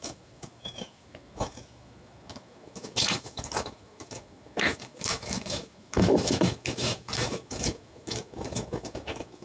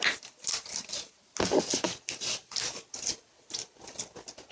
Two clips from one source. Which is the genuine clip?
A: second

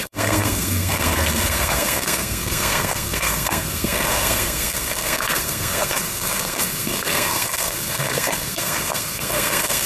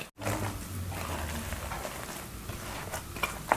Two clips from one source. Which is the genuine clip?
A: second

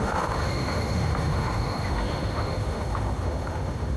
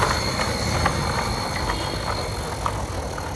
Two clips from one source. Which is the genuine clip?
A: second